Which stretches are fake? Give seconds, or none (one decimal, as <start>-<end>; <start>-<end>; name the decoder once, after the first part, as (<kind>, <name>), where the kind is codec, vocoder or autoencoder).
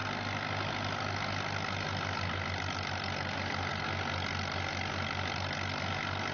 none